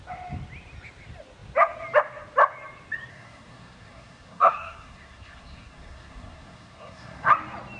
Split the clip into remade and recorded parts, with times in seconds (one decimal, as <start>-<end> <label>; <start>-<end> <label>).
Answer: 0.0-3.1 recorded; 3.1-7.3 remade; 7.3-7.8 recorded